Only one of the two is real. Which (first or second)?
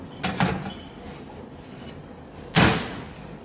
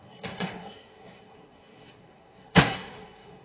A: first